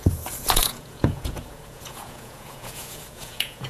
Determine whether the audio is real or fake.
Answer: fake